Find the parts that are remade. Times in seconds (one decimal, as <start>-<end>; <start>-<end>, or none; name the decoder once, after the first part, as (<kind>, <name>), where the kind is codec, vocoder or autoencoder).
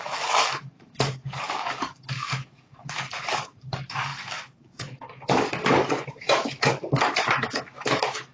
0.0-8.3 (codec, DAC)